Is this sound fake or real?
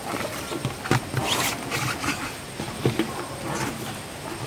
real